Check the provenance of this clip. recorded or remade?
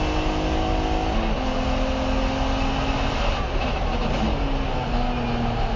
recorded